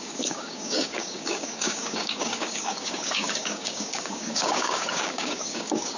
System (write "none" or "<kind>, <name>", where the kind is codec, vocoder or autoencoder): codec, DAC